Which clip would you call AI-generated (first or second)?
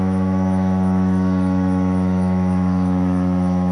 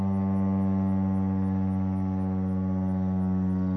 first